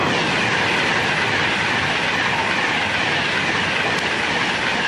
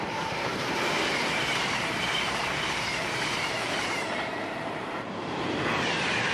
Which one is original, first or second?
first